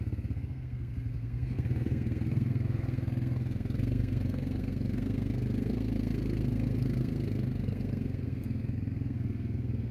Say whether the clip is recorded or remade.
remade